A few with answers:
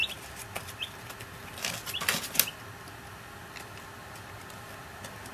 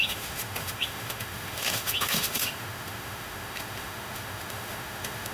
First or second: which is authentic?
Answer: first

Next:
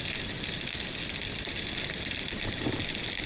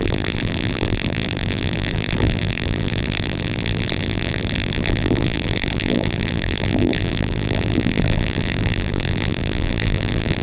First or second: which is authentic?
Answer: first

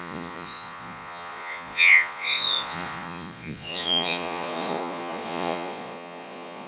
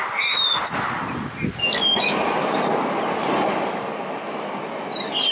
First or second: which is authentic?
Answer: second